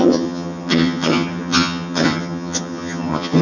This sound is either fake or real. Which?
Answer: fake